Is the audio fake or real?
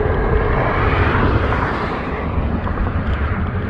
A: fake